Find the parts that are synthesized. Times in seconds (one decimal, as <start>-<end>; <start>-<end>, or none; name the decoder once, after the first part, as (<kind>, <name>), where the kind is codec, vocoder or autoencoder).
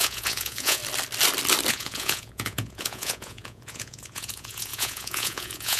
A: 0.0-0.8 (vocoder, Vocos); 1.7-5.8